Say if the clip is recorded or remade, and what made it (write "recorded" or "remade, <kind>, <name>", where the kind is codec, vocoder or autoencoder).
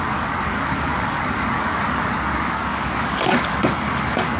remade, codec, DAC